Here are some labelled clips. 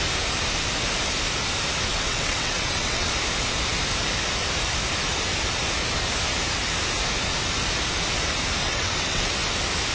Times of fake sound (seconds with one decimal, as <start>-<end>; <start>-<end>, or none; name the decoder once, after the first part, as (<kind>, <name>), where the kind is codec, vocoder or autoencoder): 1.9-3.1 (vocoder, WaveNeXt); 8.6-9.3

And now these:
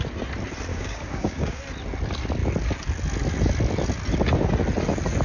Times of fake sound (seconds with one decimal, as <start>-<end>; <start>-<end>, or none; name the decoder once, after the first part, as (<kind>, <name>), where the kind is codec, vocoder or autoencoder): 0.7-1.6 (codec, DAC)

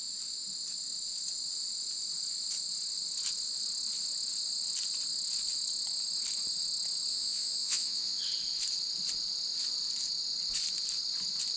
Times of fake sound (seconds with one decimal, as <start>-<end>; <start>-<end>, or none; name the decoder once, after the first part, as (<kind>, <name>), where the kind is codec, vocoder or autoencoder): 7.1-8.2 (vocoder, Vocos)

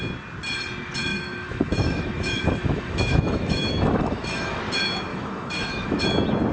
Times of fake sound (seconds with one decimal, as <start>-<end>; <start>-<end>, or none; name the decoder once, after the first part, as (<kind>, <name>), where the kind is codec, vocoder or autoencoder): 1.1-4.6 (autoencoder, DAC-VAE); 5.1-6.0